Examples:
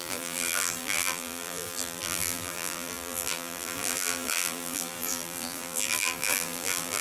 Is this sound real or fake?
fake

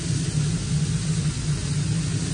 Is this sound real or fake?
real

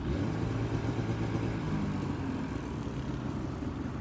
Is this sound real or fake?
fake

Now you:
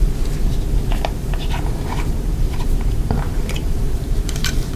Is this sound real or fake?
fake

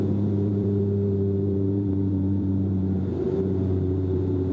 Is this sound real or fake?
fake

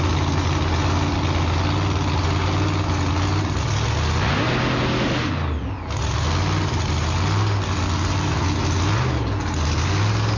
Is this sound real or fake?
real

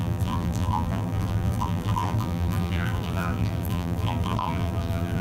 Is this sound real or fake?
fake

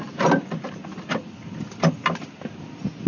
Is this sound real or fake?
real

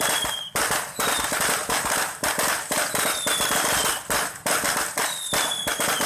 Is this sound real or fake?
real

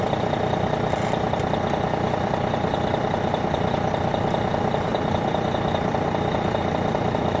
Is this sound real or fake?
fake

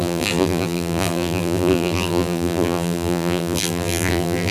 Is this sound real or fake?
fake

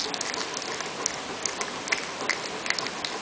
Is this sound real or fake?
real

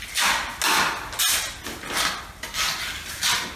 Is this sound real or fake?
real